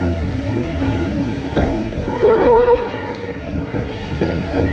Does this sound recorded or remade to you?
remade